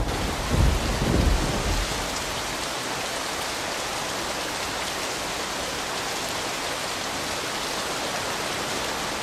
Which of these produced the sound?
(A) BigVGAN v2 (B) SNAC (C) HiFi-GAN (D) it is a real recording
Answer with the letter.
D